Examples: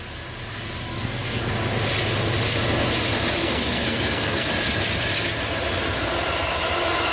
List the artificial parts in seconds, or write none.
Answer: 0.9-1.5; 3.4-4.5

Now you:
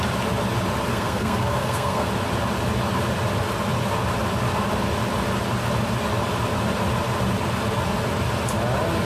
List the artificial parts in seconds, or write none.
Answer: 0.9-2.1

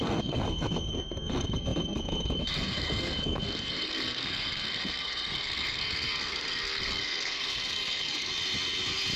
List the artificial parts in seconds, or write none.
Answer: 0.0-8.3

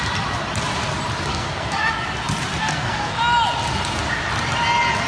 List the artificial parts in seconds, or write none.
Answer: 1.3-1.9; 2.6-3.2

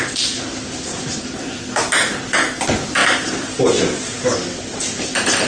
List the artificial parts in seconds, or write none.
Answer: none

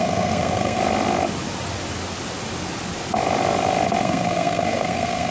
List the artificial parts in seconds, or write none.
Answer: 0.0-0.8; 4.0-5.3

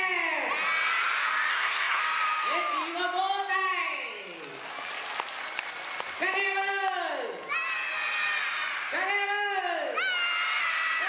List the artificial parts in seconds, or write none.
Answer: 1.5-2.0